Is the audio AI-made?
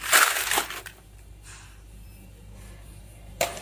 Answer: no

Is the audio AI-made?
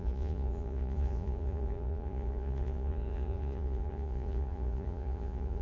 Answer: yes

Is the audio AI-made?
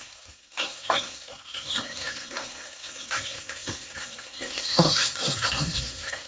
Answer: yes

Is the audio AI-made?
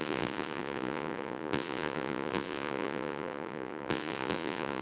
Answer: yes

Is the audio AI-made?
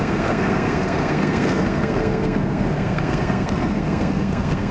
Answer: yes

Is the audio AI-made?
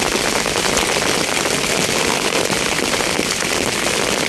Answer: no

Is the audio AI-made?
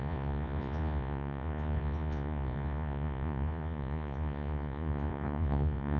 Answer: yes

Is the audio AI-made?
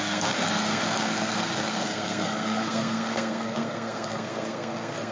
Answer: yes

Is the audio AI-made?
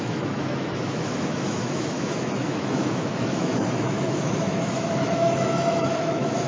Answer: yes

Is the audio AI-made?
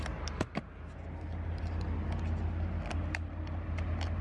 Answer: no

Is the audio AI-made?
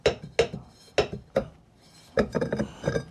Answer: no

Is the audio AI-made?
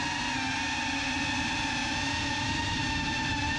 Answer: yes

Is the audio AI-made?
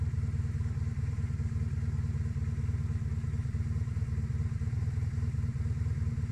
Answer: no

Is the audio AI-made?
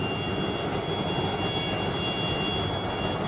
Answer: no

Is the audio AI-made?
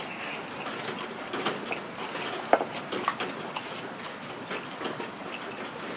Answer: no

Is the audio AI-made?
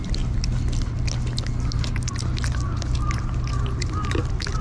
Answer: no